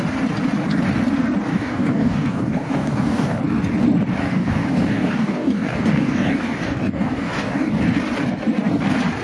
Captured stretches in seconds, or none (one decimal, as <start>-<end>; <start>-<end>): 0.0-1.5; 3.4-4.2; 7.7-9.2